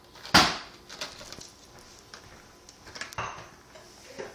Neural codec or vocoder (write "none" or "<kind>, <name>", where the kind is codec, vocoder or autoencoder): none